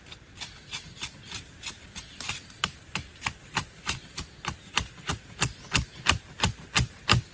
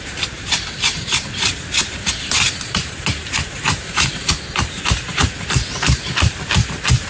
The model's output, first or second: second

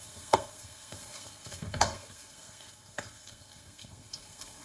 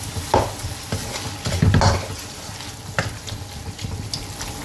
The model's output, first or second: first